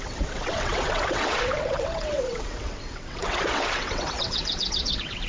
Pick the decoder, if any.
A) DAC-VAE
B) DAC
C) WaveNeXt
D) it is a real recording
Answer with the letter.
C